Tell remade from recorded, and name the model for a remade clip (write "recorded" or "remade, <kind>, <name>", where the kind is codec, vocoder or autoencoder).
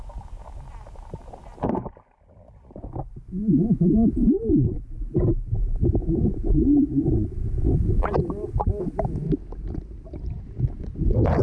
recorded